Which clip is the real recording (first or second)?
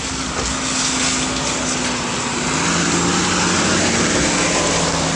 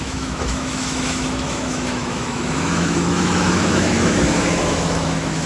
first